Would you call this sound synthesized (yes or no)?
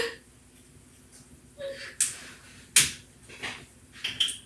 no